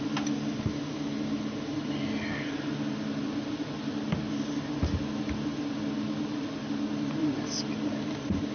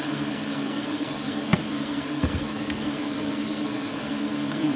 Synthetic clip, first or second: second